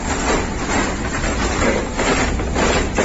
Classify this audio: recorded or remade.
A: remade